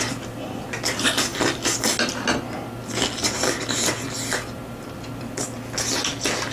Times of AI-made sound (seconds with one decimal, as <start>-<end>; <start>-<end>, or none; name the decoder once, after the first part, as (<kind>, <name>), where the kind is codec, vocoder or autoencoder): none